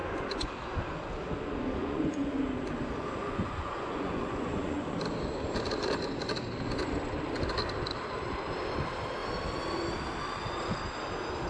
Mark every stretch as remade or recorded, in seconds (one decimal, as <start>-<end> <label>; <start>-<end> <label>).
0.0-0.6 remade; 0.6-1.8 recorded; 1.8-2.4 remade; 2.4-3.2 recorded; 3.2-5.0 remade; 5.0-11.5 recorded